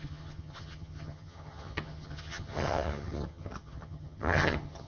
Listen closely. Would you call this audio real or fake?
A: fake